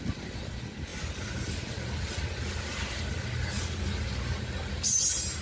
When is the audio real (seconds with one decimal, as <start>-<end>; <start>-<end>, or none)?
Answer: 0.0-5.4